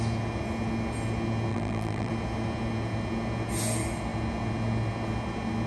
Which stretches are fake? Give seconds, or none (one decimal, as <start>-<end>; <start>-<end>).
1.5-2.1

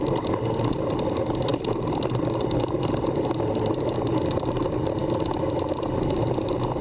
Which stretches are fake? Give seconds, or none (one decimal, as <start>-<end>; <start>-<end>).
none